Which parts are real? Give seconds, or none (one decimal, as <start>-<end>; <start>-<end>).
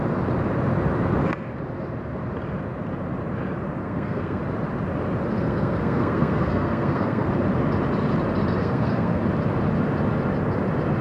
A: 0.0-3.8; 4.4-5.4; 7.3-8.6; 9.2-11.0